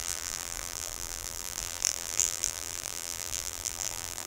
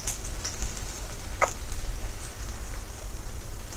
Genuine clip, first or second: second